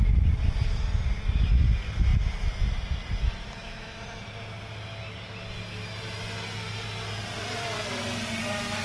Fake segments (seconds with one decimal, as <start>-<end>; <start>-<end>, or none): none